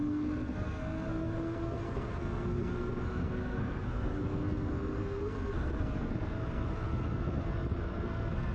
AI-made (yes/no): yes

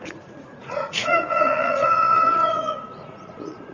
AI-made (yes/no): yes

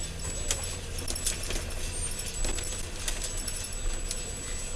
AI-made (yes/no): no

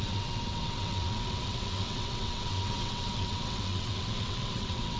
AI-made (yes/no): yes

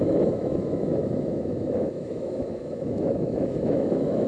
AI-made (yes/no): yes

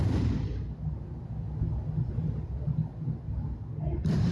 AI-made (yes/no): no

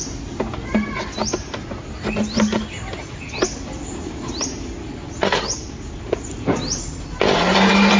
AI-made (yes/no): no